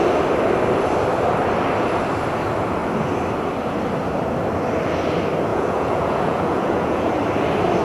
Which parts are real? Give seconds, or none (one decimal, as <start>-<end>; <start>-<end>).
0.0-5.5; 7.1-7.8